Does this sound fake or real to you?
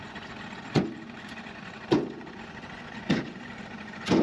fake